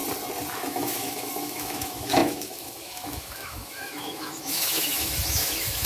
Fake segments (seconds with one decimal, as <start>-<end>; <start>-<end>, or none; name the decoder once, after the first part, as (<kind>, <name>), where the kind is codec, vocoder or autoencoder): 0.6-5.9 (autoencoder, DAC-VAE)